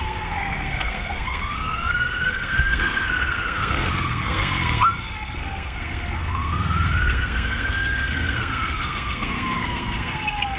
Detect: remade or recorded remade